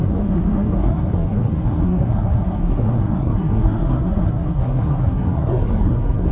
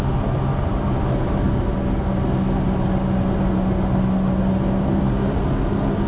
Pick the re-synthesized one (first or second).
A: first